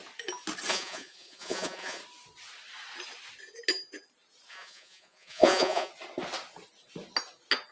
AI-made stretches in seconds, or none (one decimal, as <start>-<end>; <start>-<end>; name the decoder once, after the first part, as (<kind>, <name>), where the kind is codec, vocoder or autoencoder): 0.7-2.0 (vocoder, Vocos); 4.5-5.9